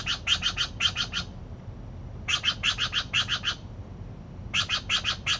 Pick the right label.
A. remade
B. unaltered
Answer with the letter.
B